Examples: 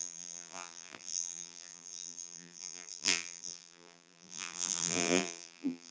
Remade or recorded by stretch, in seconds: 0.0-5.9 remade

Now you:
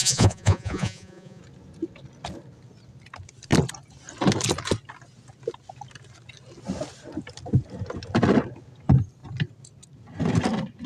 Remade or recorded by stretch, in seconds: 0.0-1.4 remade; 1.4-10.9 recorded

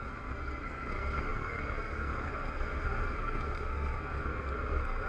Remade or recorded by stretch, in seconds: 0.0-5.1 remade

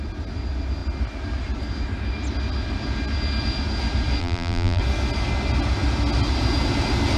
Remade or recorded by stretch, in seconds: 0.0-4.2 recorded; 4.2-4.8 remade; 4.8-7.2 recorded